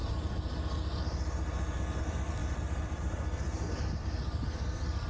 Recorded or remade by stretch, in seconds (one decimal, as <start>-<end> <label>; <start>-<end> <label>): 0.0-2.0 recorded; 2.0-5.1 remade